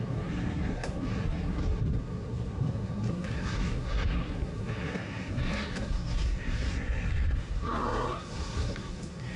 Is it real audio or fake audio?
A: fake